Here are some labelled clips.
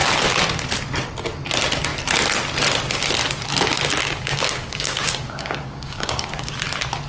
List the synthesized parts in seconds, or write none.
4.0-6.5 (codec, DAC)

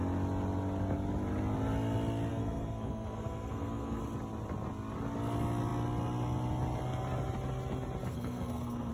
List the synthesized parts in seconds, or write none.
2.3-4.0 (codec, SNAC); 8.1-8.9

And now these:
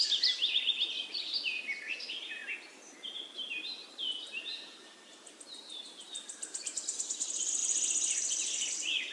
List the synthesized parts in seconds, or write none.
4.5-6.7 (vocoder, BigVGAN v2)

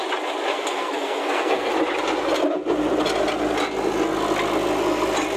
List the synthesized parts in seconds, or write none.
0.5-1.7 (codec, SNAC)

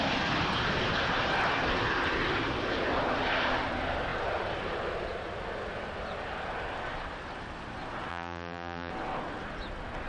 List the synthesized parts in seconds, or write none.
8.1-8.9 (vocoder, BigVGAN v2)